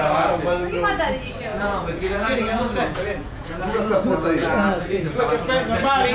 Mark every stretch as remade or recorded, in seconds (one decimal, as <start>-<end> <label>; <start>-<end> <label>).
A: 0.0-1.5 recorded; 1.5-5.2 remade; 5.2-6.1 recorded